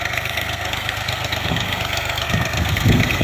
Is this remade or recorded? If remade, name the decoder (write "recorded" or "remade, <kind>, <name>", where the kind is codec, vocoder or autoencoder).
remade, codec, SNAC